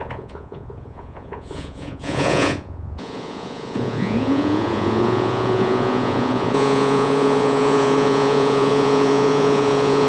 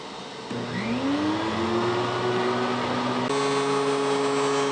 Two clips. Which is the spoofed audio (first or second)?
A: first